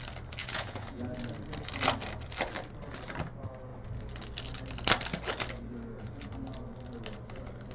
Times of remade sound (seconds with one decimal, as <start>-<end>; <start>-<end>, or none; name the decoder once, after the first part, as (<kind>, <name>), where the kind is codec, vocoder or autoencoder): 0.4-1.0 (vocoder, Vocos)